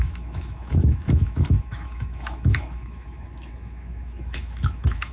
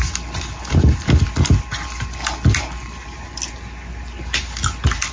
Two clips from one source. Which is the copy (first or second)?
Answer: first